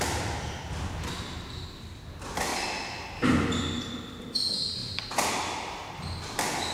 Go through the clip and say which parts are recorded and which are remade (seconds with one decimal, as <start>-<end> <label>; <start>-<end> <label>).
0.0-4.8 recorded; 4.8-5.3 remade; 5.3-6.7 recorded